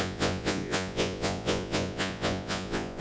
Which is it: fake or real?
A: fake